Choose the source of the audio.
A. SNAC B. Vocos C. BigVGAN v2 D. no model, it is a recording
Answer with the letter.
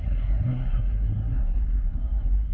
A